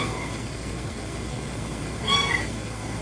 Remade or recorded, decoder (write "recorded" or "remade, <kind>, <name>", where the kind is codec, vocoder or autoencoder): remade, codec, SNAC